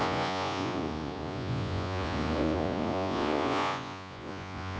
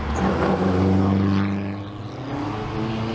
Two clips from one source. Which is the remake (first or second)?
first